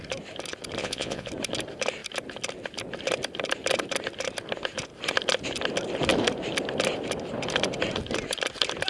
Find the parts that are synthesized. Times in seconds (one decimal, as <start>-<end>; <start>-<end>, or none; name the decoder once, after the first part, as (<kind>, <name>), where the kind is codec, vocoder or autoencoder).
0.8-1.3 (vocoder, Vocos)